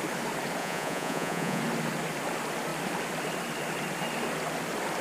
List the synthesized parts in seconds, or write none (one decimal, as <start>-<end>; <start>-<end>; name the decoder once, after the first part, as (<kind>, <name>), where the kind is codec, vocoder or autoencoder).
0.6-1.6 (vocoder, Vocos)